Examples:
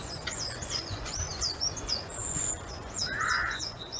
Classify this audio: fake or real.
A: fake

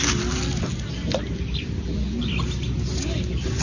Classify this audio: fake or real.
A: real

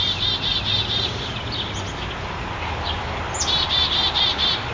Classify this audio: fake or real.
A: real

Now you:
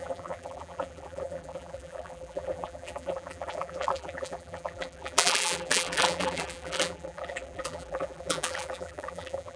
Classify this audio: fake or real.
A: fake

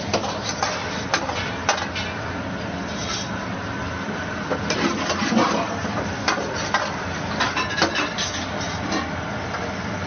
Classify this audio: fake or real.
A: real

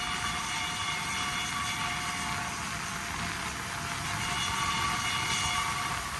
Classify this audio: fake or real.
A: real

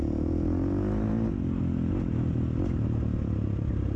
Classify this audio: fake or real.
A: real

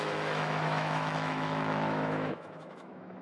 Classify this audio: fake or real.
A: fake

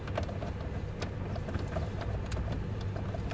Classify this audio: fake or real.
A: real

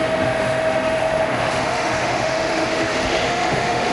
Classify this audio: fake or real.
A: fake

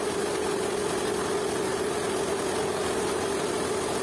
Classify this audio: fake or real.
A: real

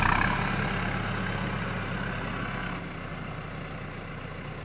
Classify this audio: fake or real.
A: real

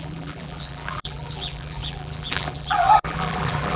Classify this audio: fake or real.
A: fake